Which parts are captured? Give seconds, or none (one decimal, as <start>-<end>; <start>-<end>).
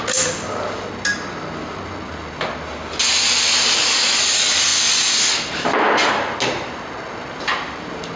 0.0-8.2